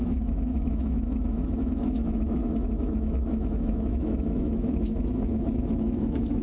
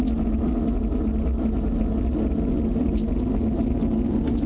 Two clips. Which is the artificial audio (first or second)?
first